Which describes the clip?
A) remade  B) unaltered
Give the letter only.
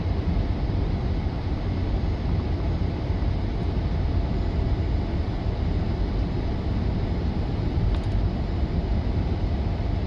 B